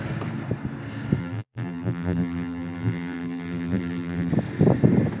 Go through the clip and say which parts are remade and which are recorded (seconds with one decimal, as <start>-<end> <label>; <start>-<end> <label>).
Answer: 0.0-1.2 recorded; 1.2-4.3 remade; 4.3-5.2 recorded